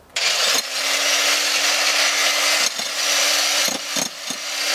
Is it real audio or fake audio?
real